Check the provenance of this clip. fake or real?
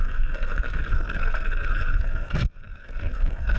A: fake